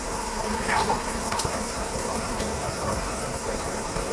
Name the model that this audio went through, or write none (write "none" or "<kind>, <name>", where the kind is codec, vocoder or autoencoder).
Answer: codec, SNAC